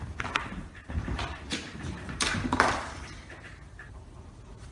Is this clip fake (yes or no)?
yes